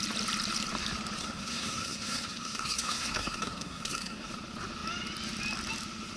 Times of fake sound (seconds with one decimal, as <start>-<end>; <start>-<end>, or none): 1.2-4.3